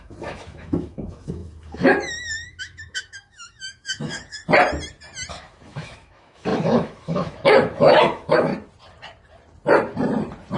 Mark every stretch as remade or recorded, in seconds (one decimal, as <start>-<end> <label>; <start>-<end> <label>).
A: 0.0-4.4 remade; 4.4-5.3 recorded; 5.3-8.5 remade; 8.5-10.6 recorded